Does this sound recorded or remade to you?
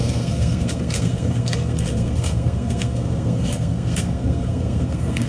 remade